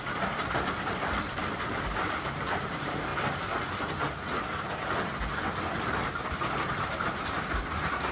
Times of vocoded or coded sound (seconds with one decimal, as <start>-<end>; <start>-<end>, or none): 0.0-3.1; 6.5-8.1